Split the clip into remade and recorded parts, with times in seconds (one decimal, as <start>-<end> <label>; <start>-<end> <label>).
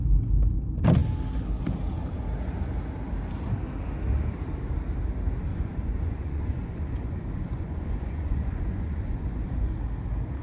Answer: 0.0-5.5 recorded; 5.5-9.7 remade; 9.7-10.4 recorded